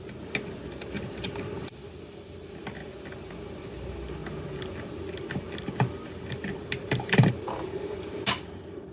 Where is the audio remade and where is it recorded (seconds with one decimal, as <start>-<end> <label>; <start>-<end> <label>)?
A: 0.0-2.8 remade; 2.8-3.3 recorded; 3.3-4.2 remade; 4.2-7.3 recorded; 7.3-8.9 remade